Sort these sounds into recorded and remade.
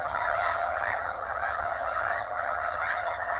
remade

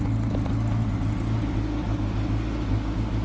recorded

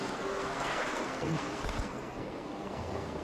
remade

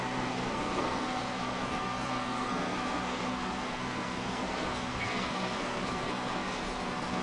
remade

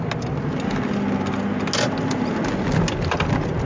recorded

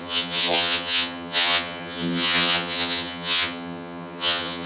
remade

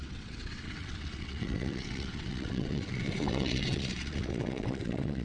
remade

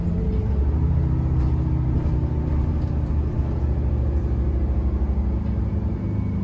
recorded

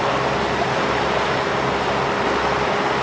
recorded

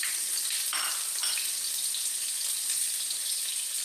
recorded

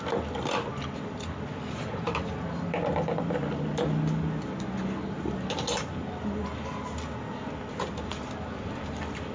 recorded